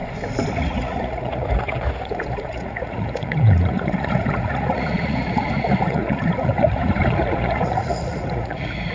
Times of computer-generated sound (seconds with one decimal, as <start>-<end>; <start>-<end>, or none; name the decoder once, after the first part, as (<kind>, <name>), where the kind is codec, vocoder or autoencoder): 0.5-8.9 (vocoder, Vocos)